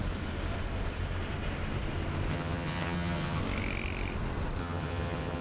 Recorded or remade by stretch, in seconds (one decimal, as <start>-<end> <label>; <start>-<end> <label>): 0.0-2.3 recorded; 2.3-3.4 remade; 3.4-4.6 recorded; 4.6-5.4 remade